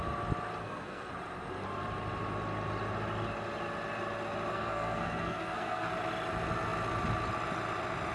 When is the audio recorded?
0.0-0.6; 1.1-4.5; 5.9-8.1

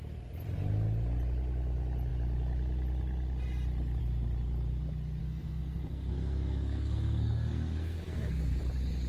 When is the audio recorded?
0.0-5.2; 8.6-9.1

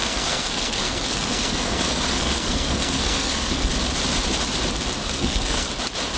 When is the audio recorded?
3.7-5.0; 5.7-6.2

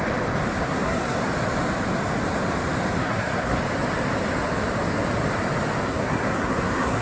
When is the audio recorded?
0.0-0.6; 1.3-3.0; 3.6-5.9

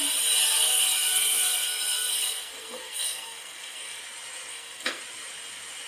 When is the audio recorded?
0.0-0.5; 4.0-4.5; 5.0-5.9